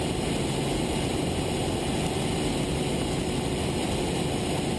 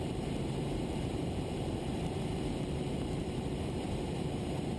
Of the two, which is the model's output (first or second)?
second